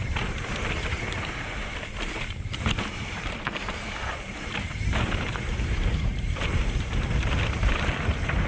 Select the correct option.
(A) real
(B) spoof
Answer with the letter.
B